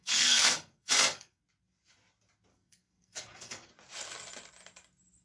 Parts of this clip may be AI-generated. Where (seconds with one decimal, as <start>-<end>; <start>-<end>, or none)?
0.0-1.4; 2.5-3.7